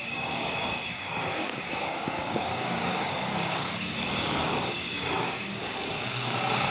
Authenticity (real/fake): fake